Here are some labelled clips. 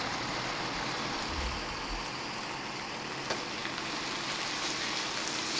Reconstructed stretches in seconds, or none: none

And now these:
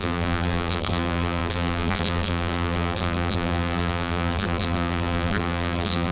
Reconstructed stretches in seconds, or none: 0.0-6.1 (vocoder, BigVGAN v2)

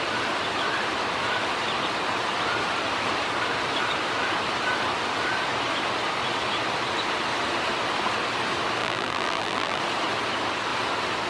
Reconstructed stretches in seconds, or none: 8.8-9.8 (vocoder, BigVGAN v2)

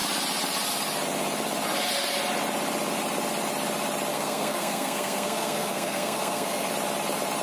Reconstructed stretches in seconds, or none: 4.1-6.7 (codec, SNAC)

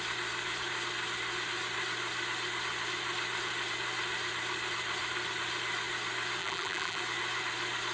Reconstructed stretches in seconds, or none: 6.4-7.0 (vocoder, BigVGAN v2)

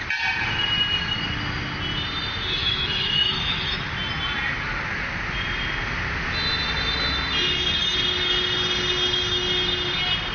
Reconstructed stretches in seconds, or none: 2.6-3.8 (autoencoder, DAC-VAE)

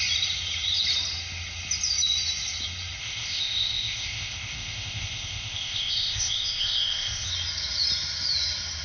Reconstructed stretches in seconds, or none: 3.0-7.3 (codec, ZipCodec)